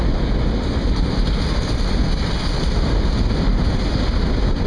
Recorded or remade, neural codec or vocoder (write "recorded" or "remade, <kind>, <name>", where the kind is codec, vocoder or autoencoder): recorded